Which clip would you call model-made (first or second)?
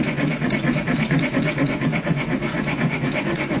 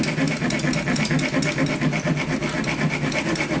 first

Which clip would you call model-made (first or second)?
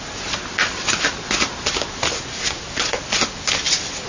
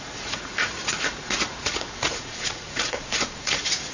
second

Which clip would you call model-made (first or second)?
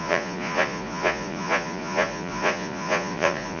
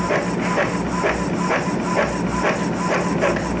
first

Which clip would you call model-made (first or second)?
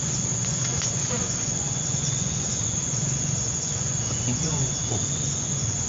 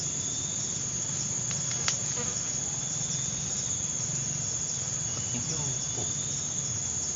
first